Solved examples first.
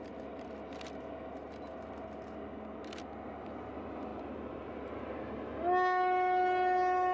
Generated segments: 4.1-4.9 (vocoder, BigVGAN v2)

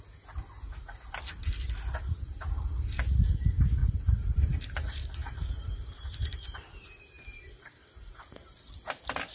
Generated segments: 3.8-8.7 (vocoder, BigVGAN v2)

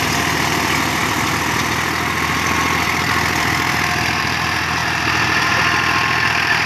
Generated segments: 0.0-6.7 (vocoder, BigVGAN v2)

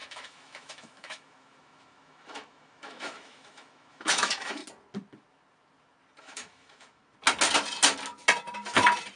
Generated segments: 0.0-4.6 (autoencoder, DAC-VAE); 6.2-7.0